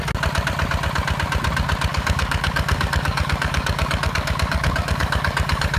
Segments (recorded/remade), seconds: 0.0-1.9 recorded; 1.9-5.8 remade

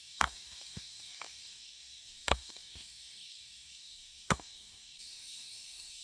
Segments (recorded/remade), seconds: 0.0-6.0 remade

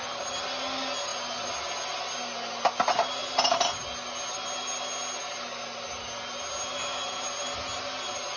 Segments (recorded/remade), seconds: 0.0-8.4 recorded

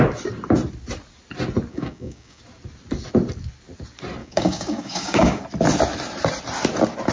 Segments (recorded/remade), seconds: 0.0-1.7 recorded; 1.7-2.4 remade; 2.4-4.2 recorded; 4.2-5.4 remade; 5.4-7.1 recorded

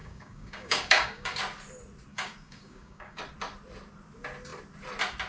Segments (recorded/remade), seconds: 0.0-1.4 remade; 1.4-2.1 recorded; 2.1-3.2 remade; 3.2-5.3 recorded